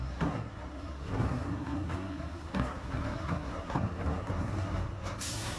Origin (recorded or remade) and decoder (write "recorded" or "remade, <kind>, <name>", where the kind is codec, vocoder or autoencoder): remade, codec, SNAC